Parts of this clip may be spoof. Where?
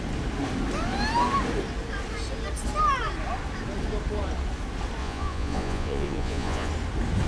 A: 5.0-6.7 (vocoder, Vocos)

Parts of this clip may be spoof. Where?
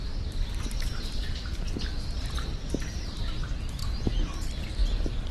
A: 0.0-3.8 (vocoder, BigVGAN v2)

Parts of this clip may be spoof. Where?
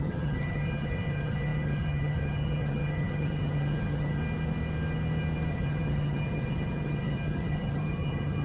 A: 0.0-4.2 (vocoder, HiFi-GAN); 5.5-8.4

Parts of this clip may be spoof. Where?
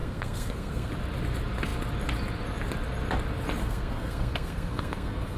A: 0.0-0.9 (codec, SNAC); 3.6-5.4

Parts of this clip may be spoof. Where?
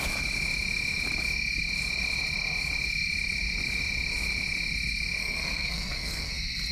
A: 5.2-6.3 (codec, SNAC)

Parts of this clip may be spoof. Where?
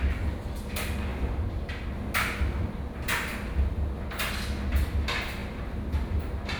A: 5.4-6.6 (vocoder, BigVGAN v2)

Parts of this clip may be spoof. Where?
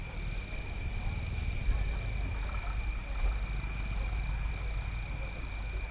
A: none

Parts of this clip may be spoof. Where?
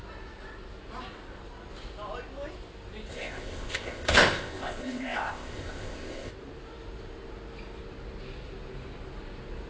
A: 3.1-6.3 (codec, ZipCodec)